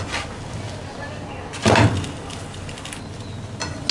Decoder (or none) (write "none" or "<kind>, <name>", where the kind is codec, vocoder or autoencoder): none